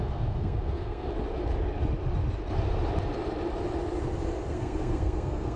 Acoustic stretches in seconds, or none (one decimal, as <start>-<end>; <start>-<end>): 1.1-4.5